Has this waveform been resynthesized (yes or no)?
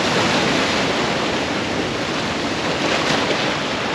no